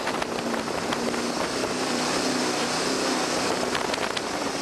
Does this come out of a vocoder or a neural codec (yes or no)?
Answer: no